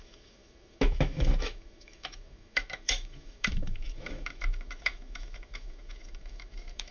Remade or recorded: remade